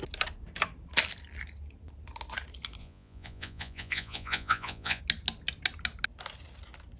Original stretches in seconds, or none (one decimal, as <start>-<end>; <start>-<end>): 0.0-2.8; 5.0-7.0

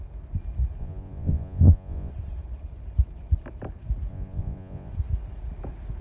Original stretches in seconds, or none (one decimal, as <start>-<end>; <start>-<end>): 0.0-0.8; 2.1-4.1; 4.9-6.0

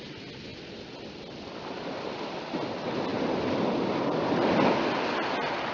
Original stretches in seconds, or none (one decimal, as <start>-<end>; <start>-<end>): 0.0-5.7

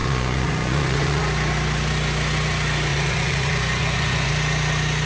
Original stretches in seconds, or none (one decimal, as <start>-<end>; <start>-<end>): 1.2-2.9; 4.3-5.1

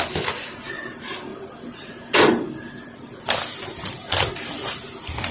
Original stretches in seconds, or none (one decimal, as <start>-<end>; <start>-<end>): 0.0-5.3

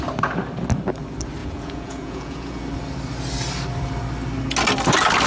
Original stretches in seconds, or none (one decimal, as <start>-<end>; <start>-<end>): 0.0-1.4; 2.6-5.3

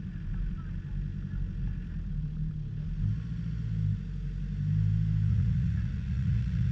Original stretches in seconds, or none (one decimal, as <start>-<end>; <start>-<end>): 0.0-5.3